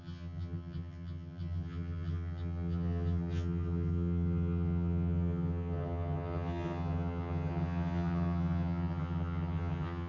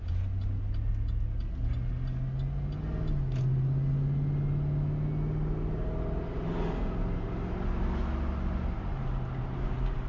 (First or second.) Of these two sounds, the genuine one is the second